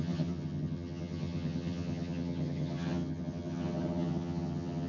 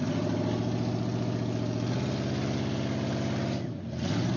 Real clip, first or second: second